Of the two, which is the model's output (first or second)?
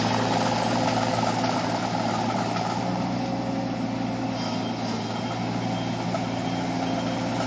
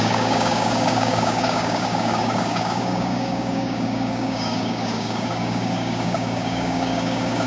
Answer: second